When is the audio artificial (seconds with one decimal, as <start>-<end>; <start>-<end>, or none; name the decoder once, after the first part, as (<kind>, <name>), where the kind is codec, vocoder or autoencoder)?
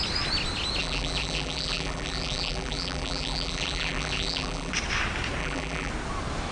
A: 0.8-4.7 (vocoder, BigVGAN v2); 5.4-5.9